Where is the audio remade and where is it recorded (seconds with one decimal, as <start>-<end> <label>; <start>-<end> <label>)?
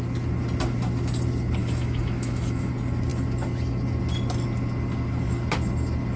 0.0-1.6 recorded; 1.6-2.7 remade; 2.7-6.2 recorded